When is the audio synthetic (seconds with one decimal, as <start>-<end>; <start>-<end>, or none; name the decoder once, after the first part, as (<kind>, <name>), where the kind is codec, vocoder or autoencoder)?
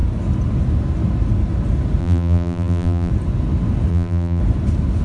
2.0-3.1 (vocoder, BigVGAN v2); 3.9-4.4